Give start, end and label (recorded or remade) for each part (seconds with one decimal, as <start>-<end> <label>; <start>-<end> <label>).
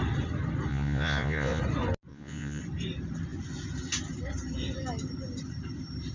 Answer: 0.0-0.7 recorded; 0.7-1.6 remade; 1.6-2.1 recorded; 2.1-2.6 remade; 2.6-6.1 recorded